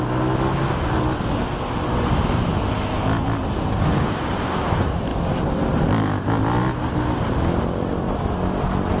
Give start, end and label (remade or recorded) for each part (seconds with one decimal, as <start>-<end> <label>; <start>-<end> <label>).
0.0-9.0 recorded